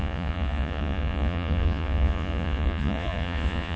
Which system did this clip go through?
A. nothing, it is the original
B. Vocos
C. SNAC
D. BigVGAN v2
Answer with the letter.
B